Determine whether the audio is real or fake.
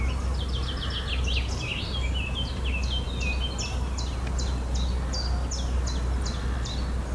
real